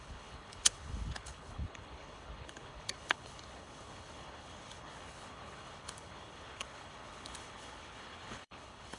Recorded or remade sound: remade